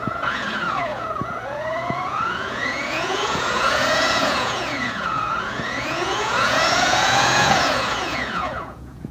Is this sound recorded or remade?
remade